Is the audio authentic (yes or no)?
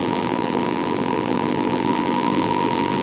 no